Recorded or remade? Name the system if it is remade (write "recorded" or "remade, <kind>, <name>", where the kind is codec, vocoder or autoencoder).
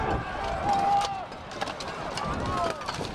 recorded